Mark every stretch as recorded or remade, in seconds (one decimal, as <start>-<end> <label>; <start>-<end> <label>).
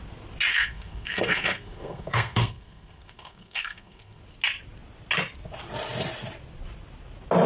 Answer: 0.0-0.5 recorded; 0.5-4.2 remade; 4.2-7.5 recorded